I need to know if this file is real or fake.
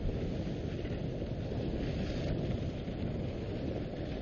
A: real